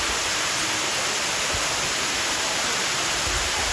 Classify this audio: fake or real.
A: real